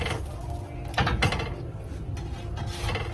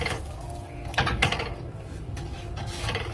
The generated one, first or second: second